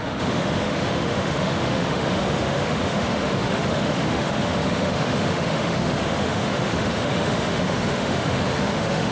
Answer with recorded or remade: remade